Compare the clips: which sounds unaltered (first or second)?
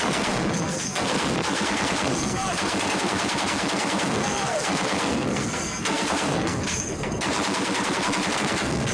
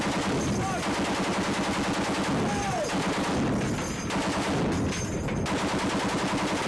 second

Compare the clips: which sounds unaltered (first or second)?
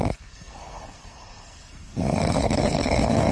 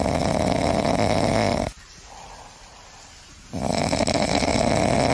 second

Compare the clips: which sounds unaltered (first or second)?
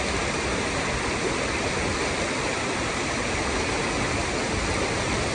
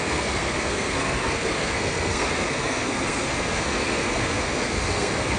first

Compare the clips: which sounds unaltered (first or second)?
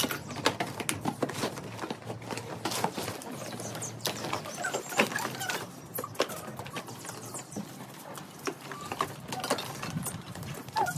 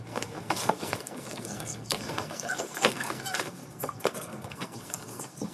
first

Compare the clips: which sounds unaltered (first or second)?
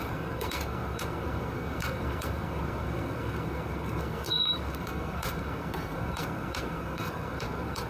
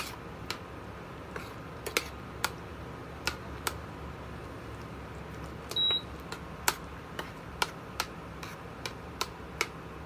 second